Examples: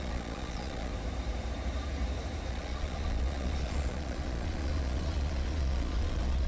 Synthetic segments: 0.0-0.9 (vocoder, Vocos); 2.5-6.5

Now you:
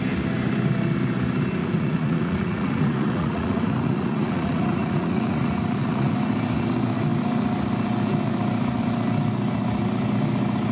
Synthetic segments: 1.6-6.1 (vocoder, Vocos)

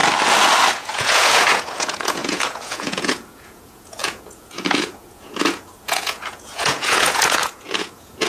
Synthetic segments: 0.7-8.3 (vocoder, Vocos)